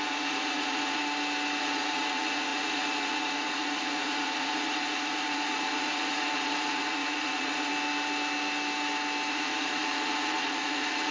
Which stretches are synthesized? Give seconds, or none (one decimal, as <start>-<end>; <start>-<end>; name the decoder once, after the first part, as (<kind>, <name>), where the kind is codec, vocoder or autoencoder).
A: 0.0-1.0 (vocoder, Vocos); 1.6-7.7; 9.3-11.1